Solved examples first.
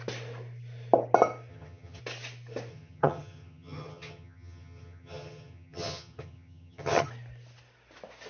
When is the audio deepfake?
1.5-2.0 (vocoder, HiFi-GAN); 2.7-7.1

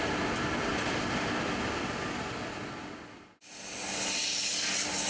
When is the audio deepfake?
none

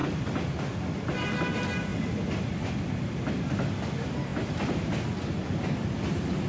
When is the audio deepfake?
1.9-2.7 (vocoder, BigVGAN v2)

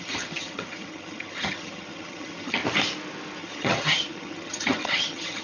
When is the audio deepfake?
0.0-2.6 (vocoder, HiFi-GAN); 3.4-5.4

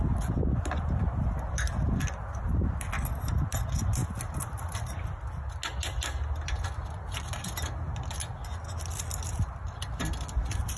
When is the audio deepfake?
none

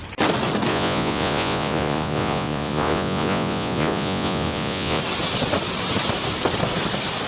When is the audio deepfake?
0.7-5.0 (vocoder, Vocos)

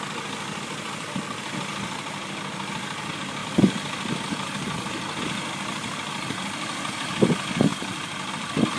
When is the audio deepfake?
none

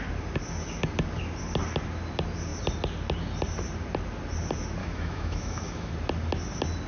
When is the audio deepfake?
4.8-5.9 (autoencoder, DAC-VAE)